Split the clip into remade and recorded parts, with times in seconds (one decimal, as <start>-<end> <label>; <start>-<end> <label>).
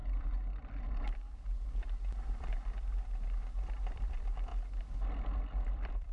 0.0-3.7 recorded; 3.7-4.5 remade; 4.5-5.4 recorded; 5.4-6.1 remade